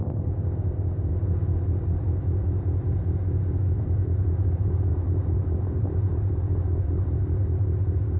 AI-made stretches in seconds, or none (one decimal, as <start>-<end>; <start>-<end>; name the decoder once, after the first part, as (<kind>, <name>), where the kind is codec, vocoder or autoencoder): 0.0-1.1 (vocoder, BigVGAN v2); 3.7-8.2

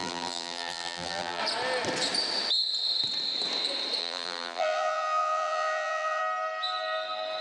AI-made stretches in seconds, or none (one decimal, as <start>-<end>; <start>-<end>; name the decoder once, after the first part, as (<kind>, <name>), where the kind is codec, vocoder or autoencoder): 0.0-1.4 (vocoder, BigVGAN v2); 4.0-6.2

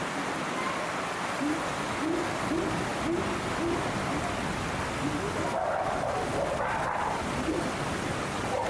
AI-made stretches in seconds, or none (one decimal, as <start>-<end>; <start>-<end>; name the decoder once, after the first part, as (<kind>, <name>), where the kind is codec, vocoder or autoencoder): none

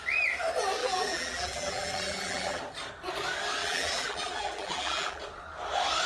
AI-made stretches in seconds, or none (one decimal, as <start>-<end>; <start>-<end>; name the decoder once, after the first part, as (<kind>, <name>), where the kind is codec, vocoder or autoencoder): 0.8-2.6 (vocoder, BigVGAN v2); 3.6-5.2

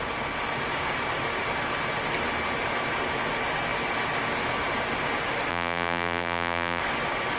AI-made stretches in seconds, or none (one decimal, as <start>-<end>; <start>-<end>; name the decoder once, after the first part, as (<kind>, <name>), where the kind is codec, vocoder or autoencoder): 5.5-6.8 (vocoder, BigVGAN v2)

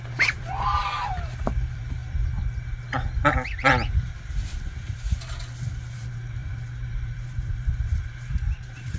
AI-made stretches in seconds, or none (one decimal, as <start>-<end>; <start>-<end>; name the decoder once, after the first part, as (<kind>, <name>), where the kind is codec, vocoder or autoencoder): 0.0-2.0 (vocoder, BigVGAN v2); 5.9-9.0